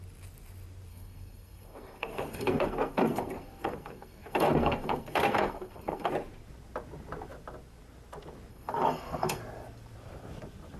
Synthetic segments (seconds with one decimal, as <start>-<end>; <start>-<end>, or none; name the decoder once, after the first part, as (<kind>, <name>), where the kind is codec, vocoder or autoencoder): 0.9-6.1 (codec, SNAC); 8.5-9.4